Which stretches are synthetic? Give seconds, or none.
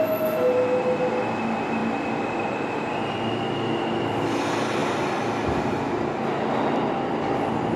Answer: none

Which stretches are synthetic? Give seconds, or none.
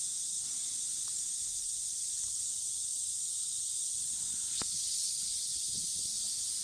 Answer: 0.9-4.9; 5.5-6.1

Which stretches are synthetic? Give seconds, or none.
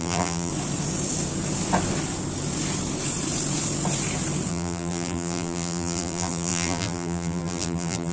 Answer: 0.0-0.5; 4.5-8.1